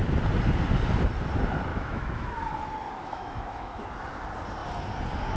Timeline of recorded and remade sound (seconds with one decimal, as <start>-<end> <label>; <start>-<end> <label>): 0.0-1.7 recorded; 1.7-2.4 remade; 2.4-3.0 recorded; 3.0-3.9 remade; 3.9-5.4 recorded